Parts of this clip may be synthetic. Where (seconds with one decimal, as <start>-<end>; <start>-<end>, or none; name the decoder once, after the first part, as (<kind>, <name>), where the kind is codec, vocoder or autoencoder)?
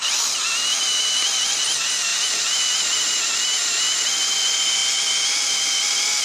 none